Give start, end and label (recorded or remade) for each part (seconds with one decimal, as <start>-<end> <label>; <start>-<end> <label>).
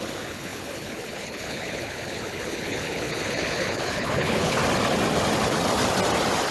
0.0-4.6 remade; 4.6-6.5 recorded